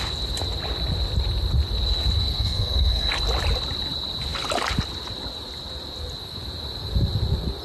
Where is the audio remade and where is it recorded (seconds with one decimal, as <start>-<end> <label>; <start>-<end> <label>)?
0.0-2.2 recorded; 2.2-3.1 remade; 3.1-7.6 recorded